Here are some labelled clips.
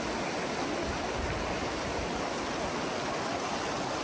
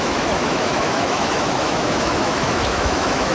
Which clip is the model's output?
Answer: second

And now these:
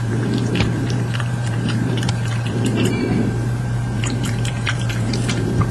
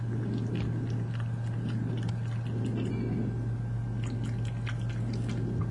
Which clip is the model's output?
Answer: first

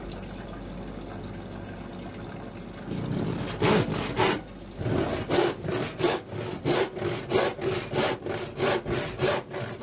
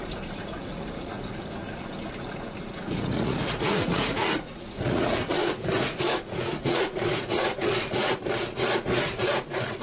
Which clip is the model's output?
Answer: second